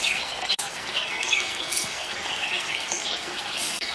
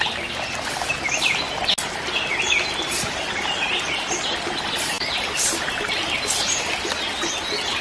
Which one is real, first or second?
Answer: second